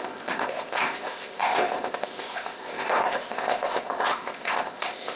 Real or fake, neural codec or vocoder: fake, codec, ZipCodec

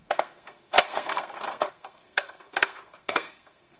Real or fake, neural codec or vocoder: fake, codec, SNAC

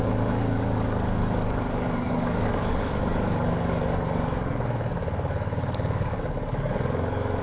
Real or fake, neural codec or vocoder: fake, codec, DAC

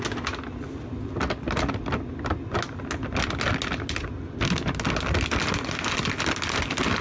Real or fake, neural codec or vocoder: real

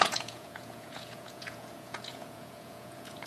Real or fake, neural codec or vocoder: fake, vocoder, Vocos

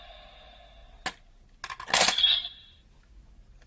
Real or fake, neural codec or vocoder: real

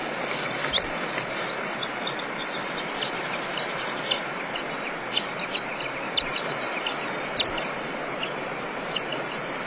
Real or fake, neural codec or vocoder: real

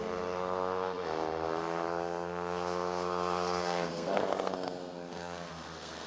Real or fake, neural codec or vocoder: fake, codec, SNAC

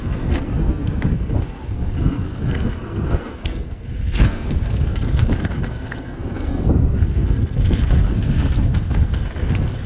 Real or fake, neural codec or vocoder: fake, codec, SNAC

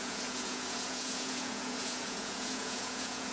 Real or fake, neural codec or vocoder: fake, vocoder, Vocos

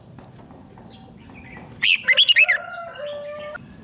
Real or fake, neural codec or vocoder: real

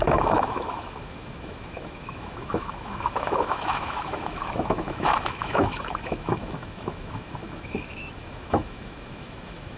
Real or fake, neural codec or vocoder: fake, autoencoder, DAC-VAE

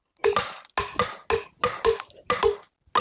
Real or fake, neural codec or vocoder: real